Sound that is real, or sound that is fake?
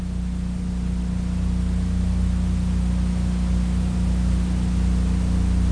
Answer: real